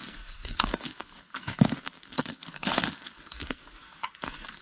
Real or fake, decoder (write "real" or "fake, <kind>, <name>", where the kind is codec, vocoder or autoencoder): fake, codec, SNAC